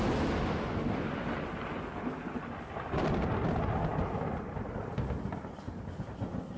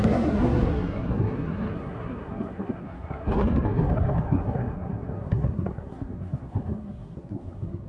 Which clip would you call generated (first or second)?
second